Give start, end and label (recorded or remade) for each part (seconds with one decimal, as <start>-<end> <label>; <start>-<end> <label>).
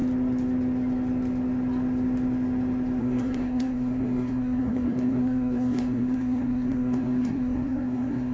0.0-3.0 recorded; 3.0-8.3 remade